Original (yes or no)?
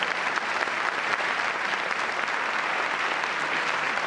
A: yes